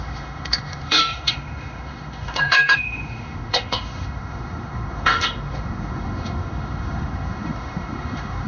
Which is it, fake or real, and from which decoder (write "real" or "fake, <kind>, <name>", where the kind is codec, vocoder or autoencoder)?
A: fake, autoencoder, DAC-VAE